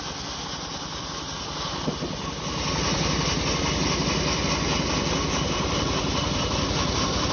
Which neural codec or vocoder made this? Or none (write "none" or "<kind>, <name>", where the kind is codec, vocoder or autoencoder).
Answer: none